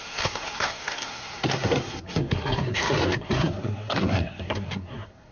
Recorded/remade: remade